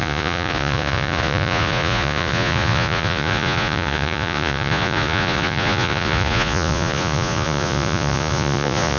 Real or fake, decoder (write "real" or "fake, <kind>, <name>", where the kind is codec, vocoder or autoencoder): fake, vocoder, Vocos